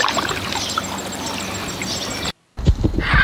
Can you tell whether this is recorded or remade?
recorded